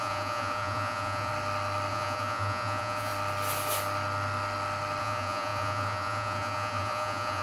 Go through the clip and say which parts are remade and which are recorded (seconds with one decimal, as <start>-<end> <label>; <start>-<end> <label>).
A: 0.0-1.3 remade; 1.3-1.9 recorded; 1.9-3.1 remade; 3.1-5.0 recorded; 5.0-7.4 remade